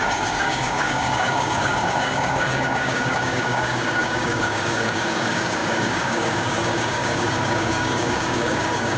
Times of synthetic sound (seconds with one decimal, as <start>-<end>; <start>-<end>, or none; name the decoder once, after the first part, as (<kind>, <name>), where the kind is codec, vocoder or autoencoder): 0.0-9.0 (codec, DAC)